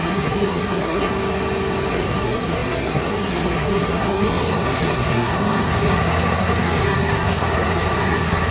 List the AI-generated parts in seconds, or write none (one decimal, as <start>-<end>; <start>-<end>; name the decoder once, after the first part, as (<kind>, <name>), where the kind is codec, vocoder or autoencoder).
0.0-1.1 (codec, SNAC); 1.9-8.5